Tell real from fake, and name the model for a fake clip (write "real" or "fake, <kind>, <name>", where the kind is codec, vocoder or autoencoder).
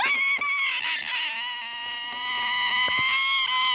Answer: real